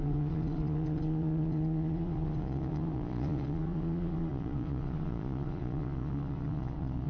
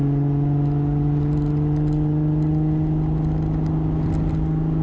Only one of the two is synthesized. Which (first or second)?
first